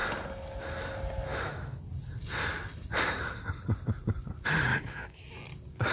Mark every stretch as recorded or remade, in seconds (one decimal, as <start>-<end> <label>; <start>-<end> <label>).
0.0-1.3 recorded; 1.3-1.8 remade; 1.8-4.7 recorded; 4.7-5.3 remade; 5.3-5.9 recorded